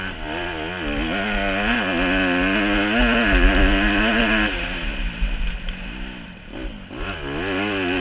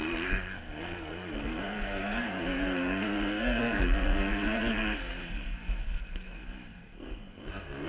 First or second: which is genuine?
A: first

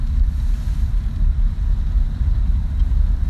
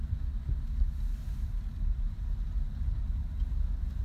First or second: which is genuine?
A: second